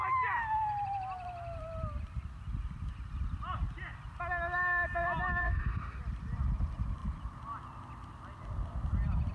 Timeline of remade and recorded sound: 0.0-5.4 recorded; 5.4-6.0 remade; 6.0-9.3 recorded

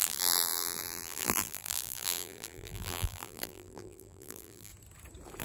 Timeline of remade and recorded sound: 0.0-4.7 remade; 4.7-5.4 recorded

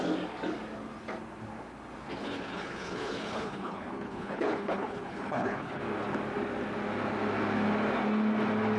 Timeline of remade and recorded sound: 0.0-2.2 recorded; 2.2-5.8 remade; 5.8-8.8 recorded

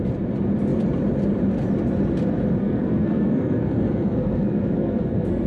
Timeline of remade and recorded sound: 0.0-2.6 recorded; 2.6-5.5 remade

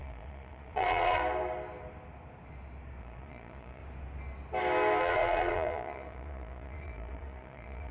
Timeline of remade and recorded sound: 0.0-1.2 remade; 1.2-3.0 recorded; 3.0-3.8 remade; 3.8-5.0 recorded; 5.0-7.9 remade